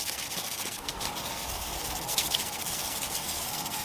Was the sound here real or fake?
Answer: fake